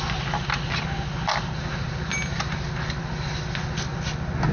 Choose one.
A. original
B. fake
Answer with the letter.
A